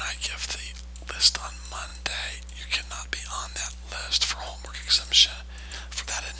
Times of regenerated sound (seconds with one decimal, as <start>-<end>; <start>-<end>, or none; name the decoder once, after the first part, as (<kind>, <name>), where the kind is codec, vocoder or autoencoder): none